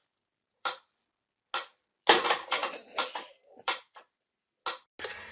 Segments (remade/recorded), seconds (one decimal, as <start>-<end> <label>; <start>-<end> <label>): 0.0-0.9 remade; 0.9-2.6 recorded; 2.6-4.0 remade; 4.0-5.3 recorded